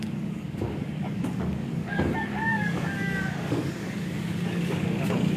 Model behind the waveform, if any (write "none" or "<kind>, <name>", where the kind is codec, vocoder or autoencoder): codec, DAC